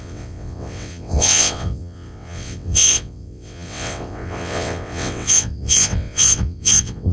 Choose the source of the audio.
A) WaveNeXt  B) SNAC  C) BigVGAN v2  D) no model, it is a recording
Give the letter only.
A